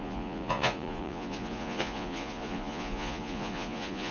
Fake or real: fake